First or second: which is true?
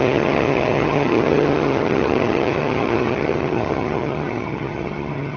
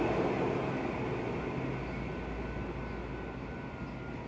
second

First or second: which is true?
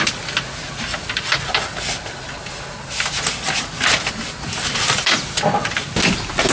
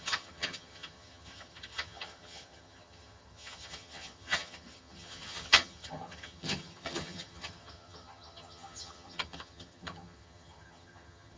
first